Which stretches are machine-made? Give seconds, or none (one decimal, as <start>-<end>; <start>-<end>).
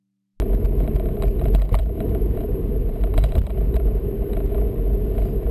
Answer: 1.8-4.3